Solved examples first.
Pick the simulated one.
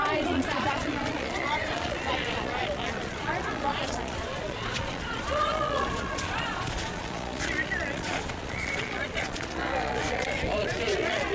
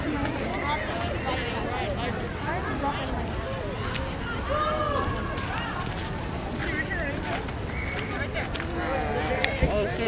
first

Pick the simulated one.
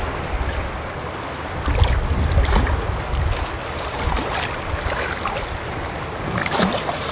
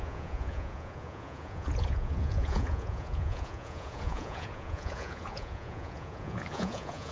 second